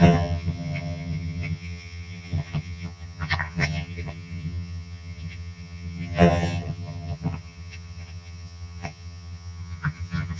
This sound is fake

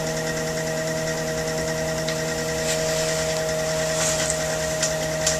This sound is real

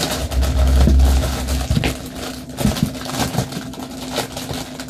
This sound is real